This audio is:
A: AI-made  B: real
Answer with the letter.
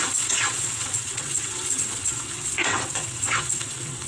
A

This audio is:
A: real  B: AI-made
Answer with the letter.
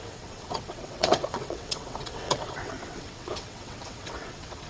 B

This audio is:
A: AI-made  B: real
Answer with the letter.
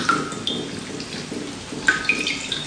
B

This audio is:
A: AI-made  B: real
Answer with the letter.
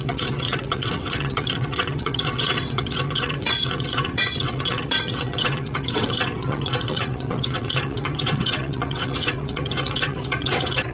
A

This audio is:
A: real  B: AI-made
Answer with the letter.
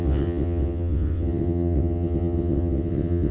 B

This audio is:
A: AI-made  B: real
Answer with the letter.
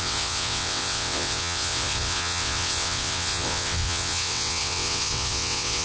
A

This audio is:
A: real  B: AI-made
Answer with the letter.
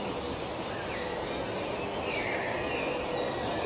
A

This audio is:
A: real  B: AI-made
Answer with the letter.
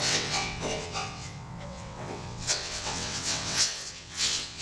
B